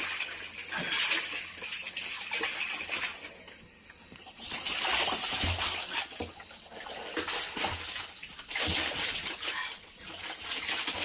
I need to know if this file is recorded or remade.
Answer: recorded